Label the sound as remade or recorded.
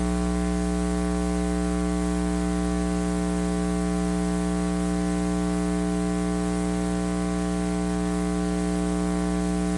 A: recorded